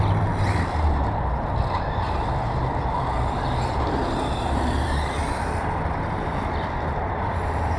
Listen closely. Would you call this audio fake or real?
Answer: fake